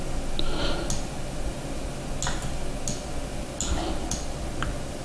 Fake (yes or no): no